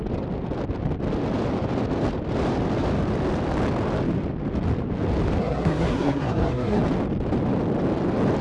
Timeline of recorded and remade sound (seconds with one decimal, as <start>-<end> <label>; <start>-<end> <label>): 0.0-5.4 recorded; 5.4-6.8 remade; 6.8-8.4 recorded